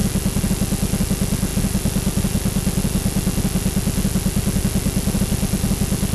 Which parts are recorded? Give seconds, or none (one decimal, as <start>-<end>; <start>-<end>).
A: 0.0-6.1